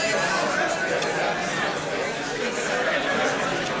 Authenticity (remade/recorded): recorded